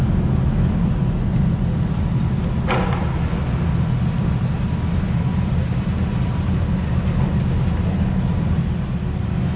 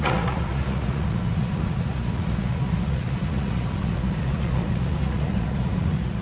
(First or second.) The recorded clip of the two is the first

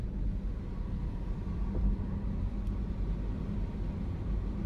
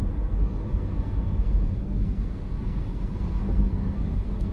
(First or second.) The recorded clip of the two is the first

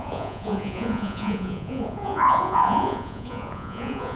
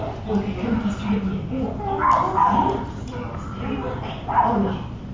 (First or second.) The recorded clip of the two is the second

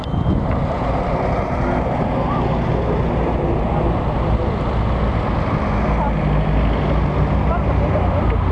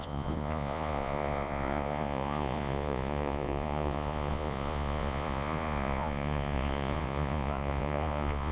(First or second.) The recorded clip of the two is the first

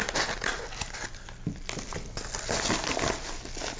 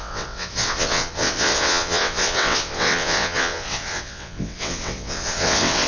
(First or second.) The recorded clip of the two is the first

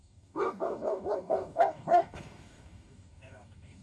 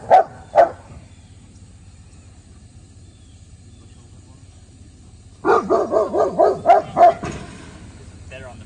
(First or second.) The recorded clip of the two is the second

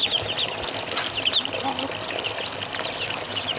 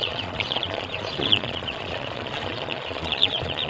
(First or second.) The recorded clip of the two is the first